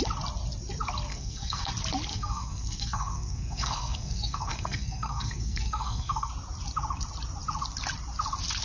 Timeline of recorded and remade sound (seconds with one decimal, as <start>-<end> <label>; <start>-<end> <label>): 0.0-1.1 recorded; 1.1-1.7 remade; 1.7-2.1 recorded; 2.1-6.3 remade; 6.3-8.6 recorded